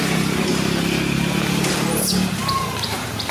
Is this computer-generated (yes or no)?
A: no